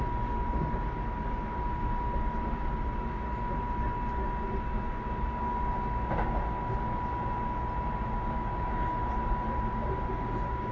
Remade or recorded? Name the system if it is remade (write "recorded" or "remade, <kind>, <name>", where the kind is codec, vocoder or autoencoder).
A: recorded